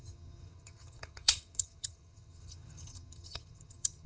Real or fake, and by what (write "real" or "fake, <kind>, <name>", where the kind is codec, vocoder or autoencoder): fake, vocoder, HiFi-GAN